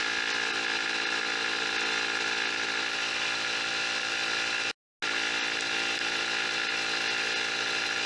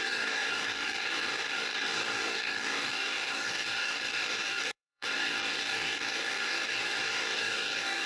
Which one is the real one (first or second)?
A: first